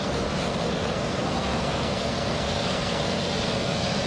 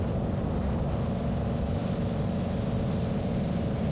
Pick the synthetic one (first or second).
first